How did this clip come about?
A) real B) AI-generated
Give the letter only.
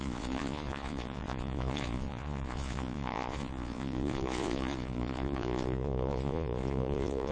B